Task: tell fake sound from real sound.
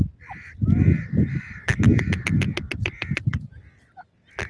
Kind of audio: real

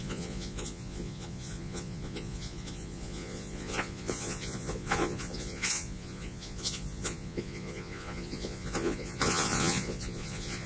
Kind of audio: fake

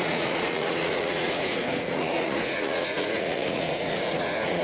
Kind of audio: fake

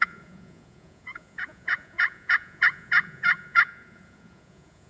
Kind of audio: fake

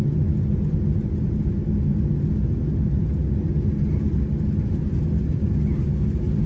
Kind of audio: real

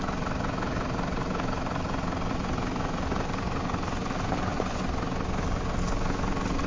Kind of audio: real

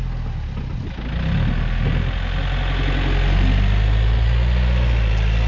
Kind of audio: real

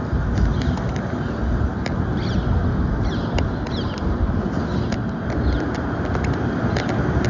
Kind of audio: real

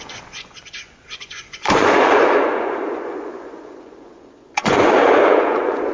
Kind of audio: fake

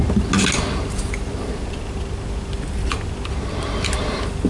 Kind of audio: real